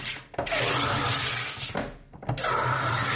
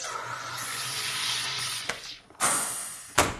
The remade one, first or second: second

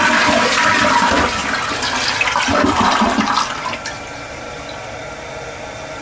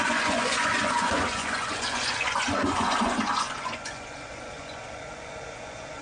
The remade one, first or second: second